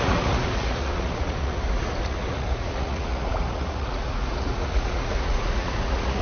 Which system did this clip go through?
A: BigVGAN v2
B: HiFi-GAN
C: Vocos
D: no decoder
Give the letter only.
C